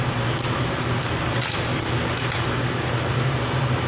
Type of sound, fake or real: fake